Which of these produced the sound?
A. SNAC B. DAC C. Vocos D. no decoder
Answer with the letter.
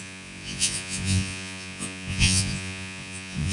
C